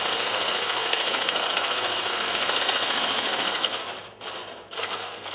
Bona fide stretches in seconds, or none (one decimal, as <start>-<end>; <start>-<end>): 3.8-4.7